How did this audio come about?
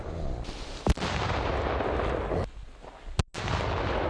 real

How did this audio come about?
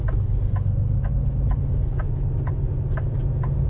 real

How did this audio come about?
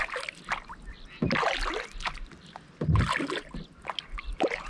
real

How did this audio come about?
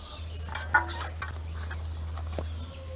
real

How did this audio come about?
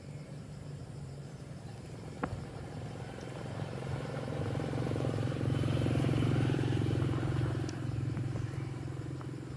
fake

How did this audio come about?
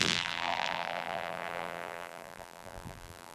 fake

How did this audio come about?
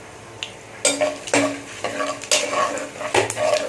real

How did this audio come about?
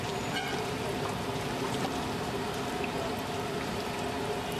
real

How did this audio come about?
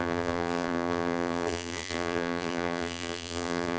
fake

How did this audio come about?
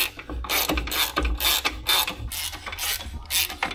real